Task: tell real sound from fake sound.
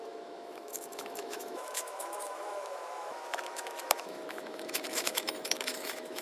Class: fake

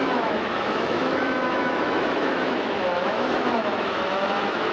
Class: fake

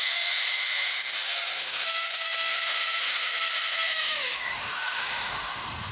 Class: fake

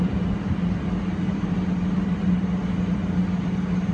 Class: real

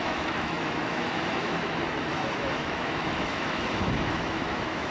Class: fake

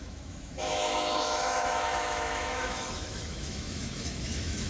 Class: fake